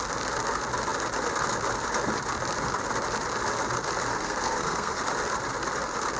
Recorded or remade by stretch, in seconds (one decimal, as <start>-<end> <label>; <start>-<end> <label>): 0.0-4.1 recorded; 4.1-5.0 remade; 5.0-6.2 recorded